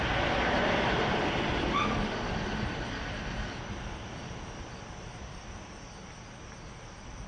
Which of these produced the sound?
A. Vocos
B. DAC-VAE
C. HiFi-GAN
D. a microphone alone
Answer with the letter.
D